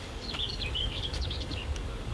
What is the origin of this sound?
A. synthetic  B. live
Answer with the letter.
A